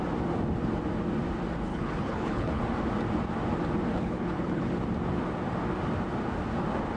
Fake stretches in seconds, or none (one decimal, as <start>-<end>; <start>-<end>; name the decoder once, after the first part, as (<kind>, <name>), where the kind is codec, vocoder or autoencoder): 1.7-2.6 (codec, HILCodec); 3.9-4.7